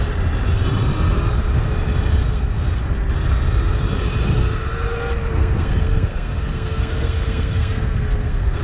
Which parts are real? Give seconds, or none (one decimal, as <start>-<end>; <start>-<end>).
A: 0.0-2.2; 2.8-5.3